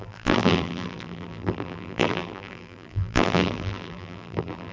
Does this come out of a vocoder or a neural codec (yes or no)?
yes